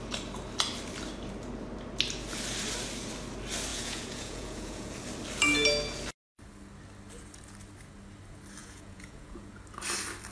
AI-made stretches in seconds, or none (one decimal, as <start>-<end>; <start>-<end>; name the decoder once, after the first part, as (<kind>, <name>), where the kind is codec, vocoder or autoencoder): 3.7-4.9 (vocoder, Vocos); 8.6-9.6